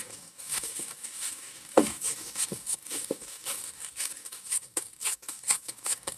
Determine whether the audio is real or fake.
fake